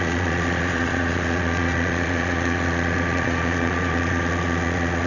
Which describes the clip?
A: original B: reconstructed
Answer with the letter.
B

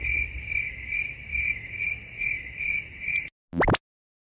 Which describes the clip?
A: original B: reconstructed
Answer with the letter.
A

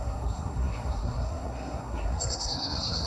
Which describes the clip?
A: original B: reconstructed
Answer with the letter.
B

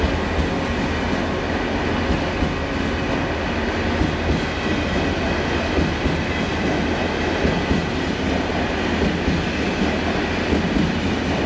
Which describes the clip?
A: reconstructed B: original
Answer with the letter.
B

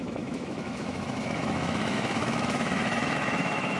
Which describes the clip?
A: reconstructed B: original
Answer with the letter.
A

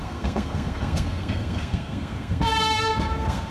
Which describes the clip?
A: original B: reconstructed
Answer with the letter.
B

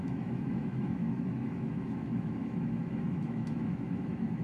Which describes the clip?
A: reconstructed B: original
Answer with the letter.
A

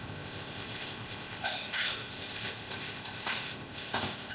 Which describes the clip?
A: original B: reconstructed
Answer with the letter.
B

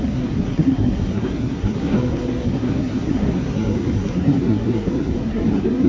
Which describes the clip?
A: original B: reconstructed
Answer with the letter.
B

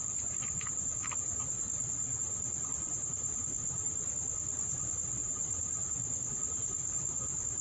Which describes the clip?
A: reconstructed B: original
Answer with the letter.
A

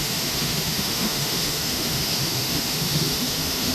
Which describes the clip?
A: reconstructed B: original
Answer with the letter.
A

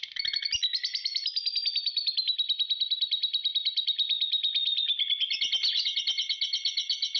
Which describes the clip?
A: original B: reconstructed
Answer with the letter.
A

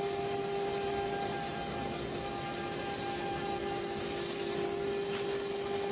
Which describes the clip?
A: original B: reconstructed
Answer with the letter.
A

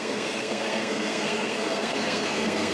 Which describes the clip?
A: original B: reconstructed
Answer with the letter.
B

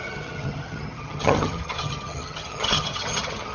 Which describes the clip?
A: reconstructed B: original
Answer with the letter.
A